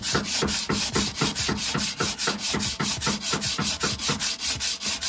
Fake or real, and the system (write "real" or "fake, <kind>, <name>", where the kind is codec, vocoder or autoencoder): real